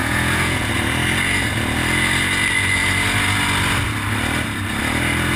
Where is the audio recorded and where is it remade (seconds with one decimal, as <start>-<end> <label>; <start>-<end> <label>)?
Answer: 0.0-0.7 remade; 0.7-5.4 recorded

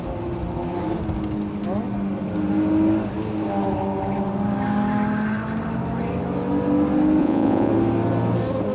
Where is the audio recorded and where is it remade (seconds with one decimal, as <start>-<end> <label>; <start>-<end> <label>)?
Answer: 0.0-7.2 recorded; 7.2-7.7 remade; 7.7-8.7 recorded

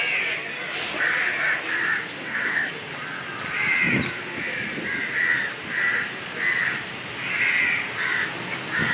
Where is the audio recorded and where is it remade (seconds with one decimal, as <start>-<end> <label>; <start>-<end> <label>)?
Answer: 0.0-2.2 recorded; 2.2-2.7 remade; 2.7-8.9 recorded

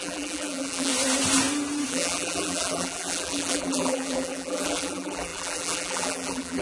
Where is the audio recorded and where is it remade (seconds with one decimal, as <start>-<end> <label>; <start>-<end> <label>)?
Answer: 0.0-0.9 remade; 0.9-1.9 recorded; 1.9-6.6 remade

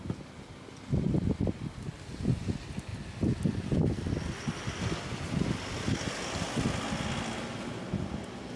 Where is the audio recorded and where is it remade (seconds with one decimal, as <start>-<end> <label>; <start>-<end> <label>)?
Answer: 0.0-8.6 recorded

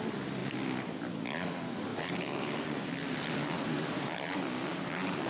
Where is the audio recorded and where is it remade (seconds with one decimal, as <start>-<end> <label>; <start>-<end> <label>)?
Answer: 0.0-1.9 recorded; 1.9-2.8 remade; 2.8-4.7 recorded; 4.7-5.3 remade

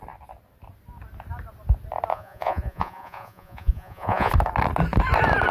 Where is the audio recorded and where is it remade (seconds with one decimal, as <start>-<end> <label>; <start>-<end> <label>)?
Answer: 0.0-2.1 recorded; 2.1-4.3 remade; 4.3-5.5 recorded